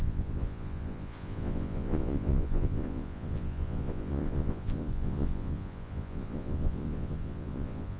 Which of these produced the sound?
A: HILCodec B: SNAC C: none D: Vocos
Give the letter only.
D